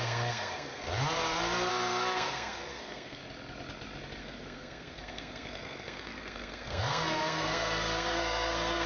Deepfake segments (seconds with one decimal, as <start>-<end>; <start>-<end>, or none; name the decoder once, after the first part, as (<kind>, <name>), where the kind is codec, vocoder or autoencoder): 0.0-0.8 (codec, SNAC); 1.7-3.2; 4.2-8.9